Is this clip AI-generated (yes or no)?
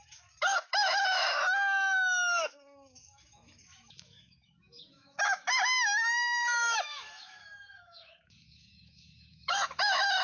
yes